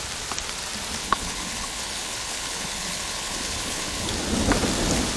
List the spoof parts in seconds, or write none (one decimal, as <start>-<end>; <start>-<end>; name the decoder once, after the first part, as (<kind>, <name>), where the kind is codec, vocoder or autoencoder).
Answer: 1.0-4.1 (codec, HILCodec)